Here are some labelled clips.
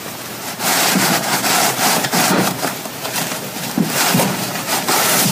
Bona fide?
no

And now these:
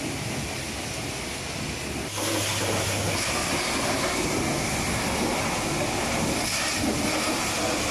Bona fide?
yes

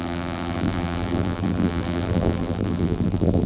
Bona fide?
no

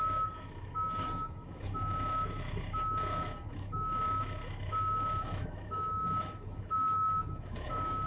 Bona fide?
no